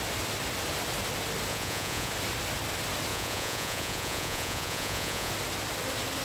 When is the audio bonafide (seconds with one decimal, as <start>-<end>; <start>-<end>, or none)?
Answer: 0.0-1.5; 2.1-3.1; 5.3-6.2